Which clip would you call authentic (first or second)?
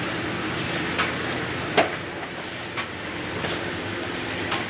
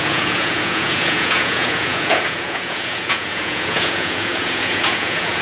first